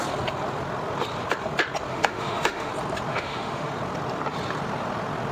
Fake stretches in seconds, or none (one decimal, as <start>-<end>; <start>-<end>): 1.9-2.7; 3.1-3.7